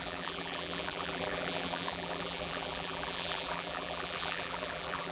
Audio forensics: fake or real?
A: fake